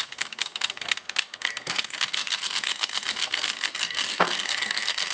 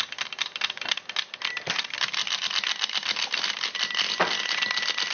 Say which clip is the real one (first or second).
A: second